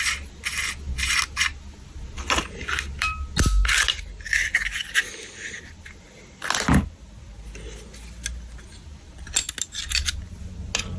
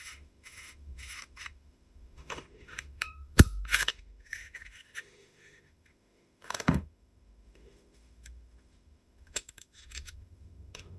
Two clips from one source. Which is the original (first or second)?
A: first